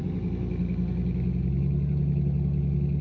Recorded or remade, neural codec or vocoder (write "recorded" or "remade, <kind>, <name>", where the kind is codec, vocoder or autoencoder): recorded